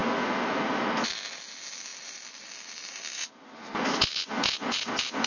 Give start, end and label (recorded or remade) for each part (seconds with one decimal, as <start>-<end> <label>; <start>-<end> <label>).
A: 0.0-5.3 recorded